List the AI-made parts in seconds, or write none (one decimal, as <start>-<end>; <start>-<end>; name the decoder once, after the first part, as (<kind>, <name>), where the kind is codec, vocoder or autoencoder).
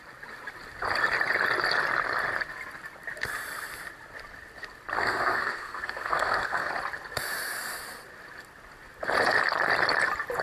5.0-6.7 (codec, SNAC)